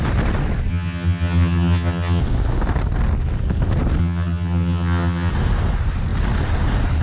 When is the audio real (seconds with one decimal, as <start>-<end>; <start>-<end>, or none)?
0.0-0.7; 2.2-4.0; 5.3-7.0